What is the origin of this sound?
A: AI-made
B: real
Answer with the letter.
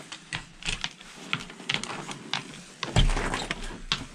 B